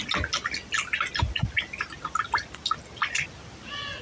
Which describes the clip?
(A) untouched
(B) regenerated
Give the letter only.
A